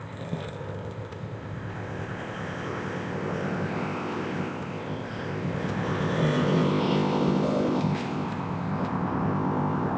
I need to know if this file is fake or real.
fake